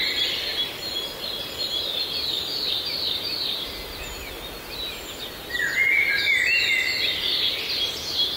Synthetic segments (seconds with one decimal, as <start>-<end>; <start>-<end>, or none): none